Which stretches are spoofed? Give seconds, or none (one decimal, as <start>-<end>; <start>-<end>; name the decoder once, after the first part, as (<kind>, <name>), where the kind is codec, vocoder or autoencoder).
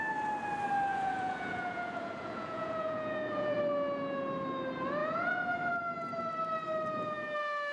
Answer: 0.9-3.6 (vocoder, Vocos); 5.0-5.7